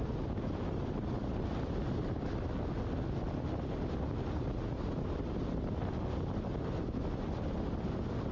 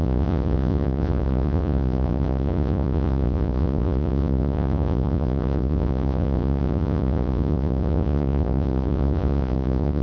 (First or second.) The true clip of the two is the first